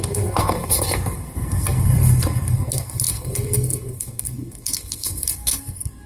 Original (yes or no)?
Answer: no